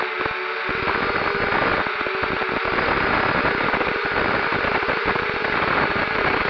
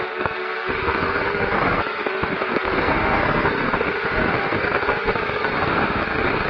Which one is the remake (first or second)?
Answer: second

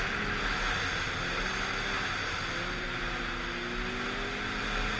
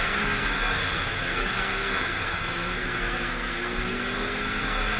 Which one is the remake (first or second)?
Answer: second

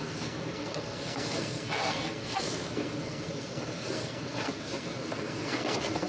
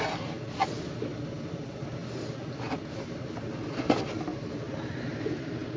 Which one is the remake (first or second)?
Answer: first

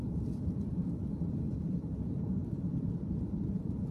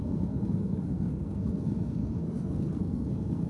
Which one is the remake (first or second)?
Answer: second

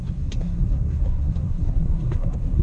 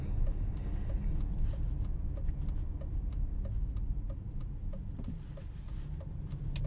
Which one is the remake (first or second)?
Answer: first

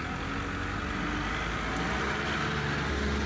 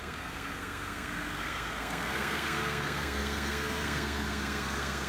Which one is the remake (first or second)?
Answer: second